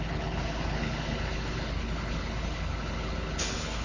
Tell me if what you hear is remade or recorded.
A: remade